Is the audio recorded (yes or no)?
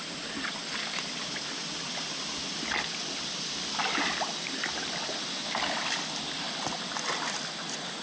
yes